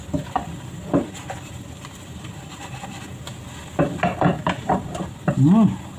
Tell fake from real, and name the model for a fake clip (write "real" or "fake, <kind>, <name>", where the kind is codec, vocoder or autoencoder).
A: real